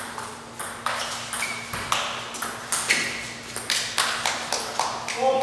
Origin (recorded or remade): recorded